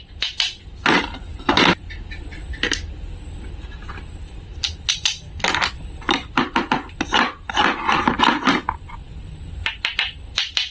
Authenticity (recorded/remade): recorded